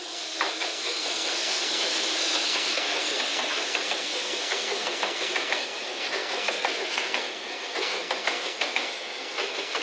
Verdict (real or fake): fake